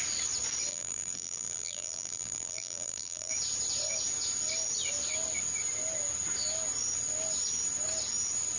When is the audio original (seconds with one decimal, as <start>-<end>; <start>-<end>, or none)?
0.0-0.7; 3.3-8.6